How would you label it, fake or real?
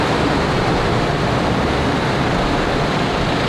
real